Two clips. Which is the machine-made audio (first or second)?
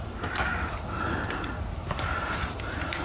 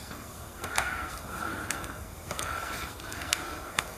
second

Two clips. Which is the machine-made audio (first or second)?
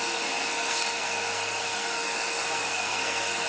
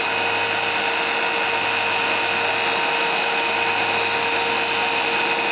first